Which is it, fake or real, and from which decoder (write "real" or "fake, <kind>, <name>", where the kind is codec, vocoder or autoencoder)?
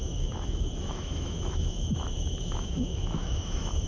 fake, autoencoder, DAC-VAE